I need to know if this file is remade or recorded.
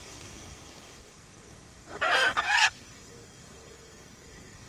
remade